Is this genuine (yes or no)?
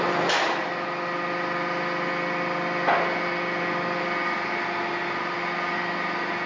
yes